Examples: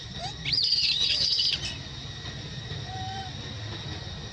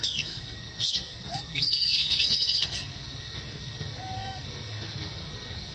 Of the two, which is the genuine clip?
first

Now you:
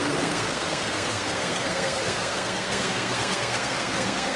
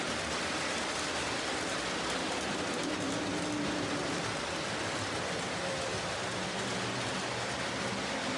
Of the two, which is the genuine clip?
second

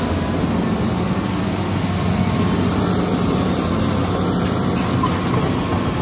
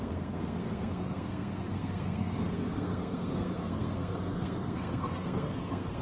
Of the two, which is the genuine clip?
first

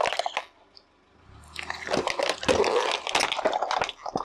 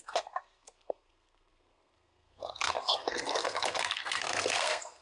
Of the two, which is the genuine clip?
first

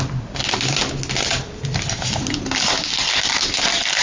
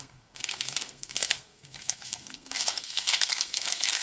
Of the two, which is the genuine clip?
first